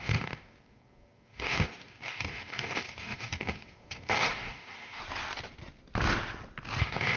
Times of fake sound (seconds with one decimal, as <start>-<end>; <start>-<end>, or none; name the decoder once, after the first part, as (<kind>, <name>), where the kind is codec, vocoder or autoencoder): 0.0-5.0 (codec, DAC); 6.8-7.2